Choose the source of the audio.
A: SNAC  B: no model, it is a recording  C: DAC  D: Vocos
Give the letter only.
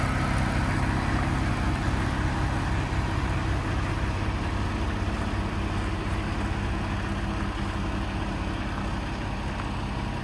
B